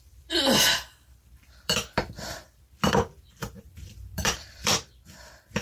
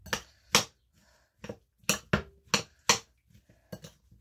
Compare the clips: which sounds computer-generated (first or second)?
first